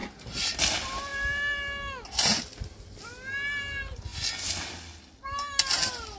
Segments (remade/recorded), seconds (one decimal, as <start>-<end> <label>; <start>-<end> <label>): 0.0-0.6 remade; 0.6-6.2 recorded